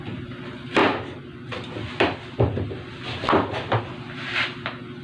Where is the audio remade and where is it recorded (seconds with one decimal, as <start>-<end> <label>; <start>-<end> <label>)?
0.0-5.0 recorded